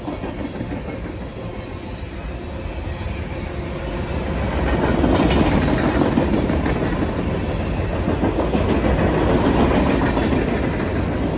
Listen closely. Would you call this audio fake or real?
real